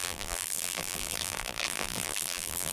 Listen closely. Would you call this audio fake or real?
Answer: fake